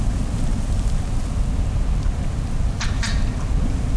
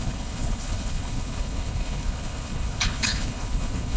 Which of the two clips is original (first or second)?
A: first